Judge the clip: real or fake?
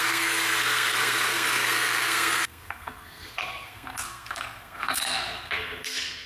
fake